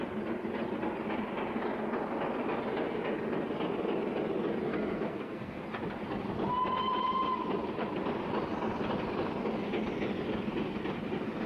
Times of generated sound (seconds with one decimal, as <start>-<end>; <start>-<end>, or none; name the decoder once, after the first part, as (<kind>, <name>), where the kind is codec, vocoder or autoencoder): 4.7-5.6 (codec, SNAC)